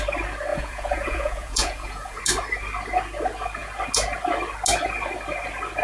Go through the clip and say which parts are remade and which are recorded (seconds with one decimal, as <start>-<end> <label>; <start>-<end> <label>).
0.0-0.5 recorded; 0.5-2.2 remade; 2.2-5.8 recorded